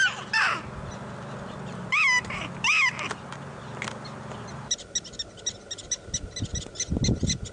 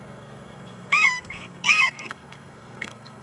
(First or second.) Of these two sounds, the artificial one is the second